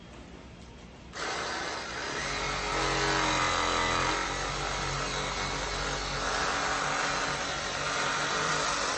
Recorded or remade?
recorded